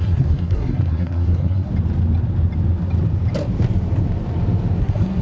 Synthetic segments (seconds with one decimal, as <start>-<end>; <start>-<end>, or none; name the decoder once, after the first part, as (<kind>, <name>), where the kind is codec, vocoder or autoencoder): 0.0-1.7 (codec, SNAC); 4.8-5.2